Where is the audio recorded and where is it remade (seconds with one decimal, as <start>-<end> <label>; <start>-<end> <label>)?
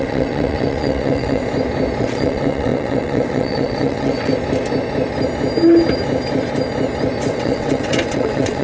0.0-1.4 remade; 1.4-2.0 recorded; 2.0-4.3 remade; 4.3-7.3 recorded; 7.3-8.6 remade